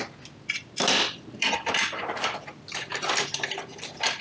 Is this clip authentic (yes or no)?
yes